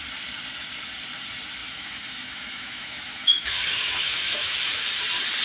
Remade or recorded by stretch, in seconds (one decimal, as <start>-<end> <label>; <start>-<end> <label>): 0.0-1.6 recorded; 1.6-4.8 remade; 4.8-5.4 recorded